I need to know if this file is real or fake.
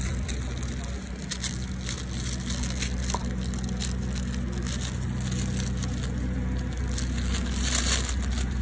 real